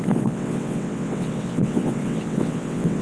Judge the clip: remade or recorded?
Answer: remade